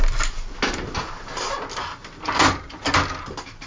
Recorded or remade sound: recorded